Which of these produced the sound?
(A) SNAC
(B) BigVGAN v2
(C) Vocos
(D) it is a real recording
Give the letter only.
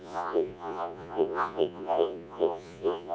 C